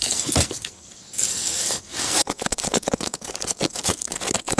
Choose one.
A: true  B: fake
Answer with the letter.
B